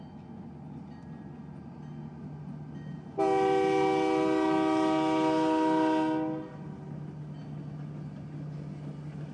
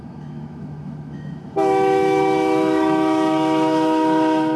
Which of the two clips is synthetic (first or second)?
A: second